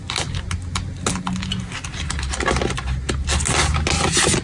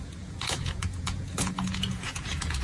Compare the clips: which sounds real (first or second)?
first